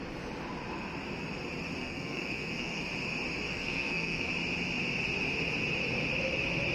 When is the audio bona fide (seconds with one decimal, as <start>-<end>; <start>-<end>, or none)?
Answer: 0.0-1.8; 2.8-3.5; 4.3-6.7